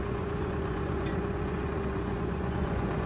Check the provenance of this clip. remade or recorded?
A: remade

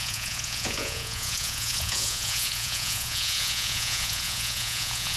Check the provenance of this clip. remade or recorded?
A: remade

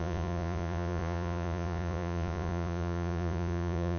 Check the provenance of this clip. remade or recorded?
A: remade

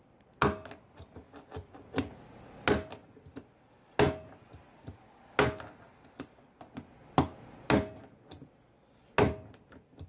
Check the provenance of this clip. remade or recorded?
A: recorded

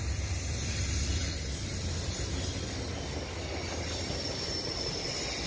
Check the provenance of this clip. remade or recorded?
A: recorded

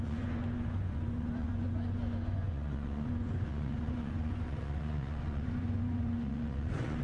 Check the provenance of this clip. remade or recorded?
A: remade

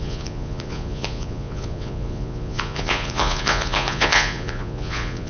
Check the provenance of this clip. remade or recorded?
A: remade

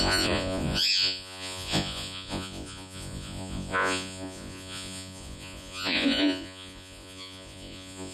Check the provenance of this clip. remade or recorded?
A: remade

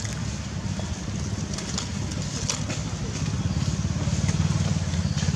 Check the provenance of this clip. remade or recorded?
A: recorded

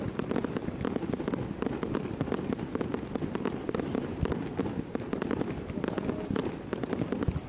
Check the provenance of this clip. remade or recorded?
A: recorded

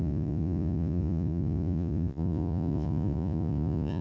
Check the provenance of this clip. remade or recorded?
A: remade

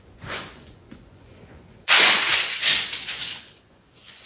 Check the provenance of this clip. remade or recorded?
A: remade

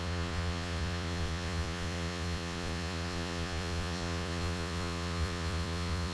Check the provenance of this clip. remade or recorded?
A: remade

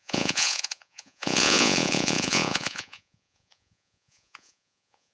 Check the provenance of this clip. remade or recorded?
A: remade